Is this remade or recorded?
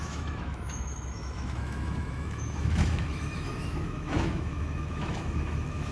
remade